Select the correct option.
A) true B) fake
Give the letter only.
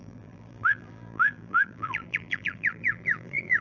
B